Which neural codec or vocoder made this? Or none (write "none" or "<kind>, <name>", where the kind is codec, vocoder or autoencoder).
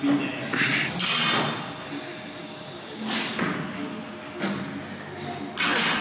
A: none